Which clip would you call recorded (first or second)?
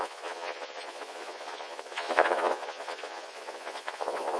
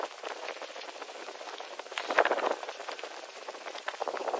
second